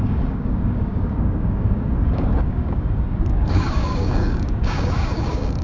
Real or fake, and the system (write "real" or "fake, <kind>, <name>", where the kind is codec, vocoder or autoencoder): fake, codec, DAC